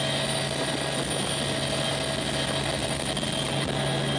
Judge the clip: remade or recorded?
recorded